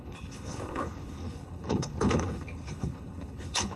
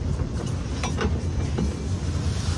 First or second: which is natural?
second